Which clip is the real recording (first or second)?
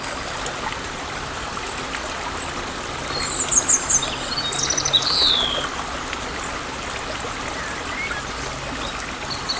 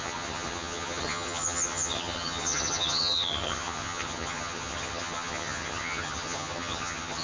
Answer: first